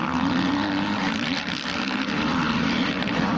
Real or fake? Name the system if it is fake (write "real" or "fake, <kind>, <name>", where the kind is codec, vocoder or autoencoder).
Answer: fake, vocoder, BigVGAN v2